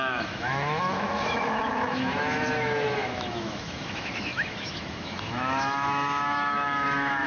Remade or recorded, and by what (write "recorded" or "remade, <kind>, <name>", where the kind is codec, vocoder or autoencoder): remade, autoencoder, DAC-VAE